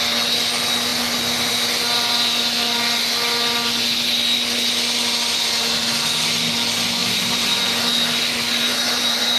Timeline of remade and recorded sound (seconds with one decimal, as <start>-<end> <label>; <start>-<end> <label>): 0.0-7.0 recorded; 7.0-7.6 remade; 7.6-8.7 recorded; 8.7-9.4 remade